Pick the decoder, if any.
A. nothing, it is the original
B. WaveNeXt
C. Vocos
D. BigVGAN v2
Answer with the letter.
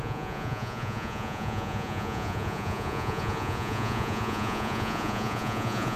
C